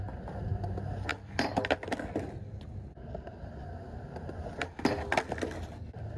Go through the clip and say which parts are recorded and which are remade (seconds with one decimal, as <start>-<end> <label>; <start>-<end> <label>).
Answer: 0.0-6.2 recorded